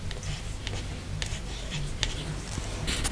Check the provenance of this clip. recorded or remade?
recorded